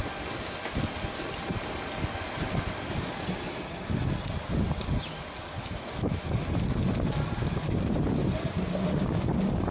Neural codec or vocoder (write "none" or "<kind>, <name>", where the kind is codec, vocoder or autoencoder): none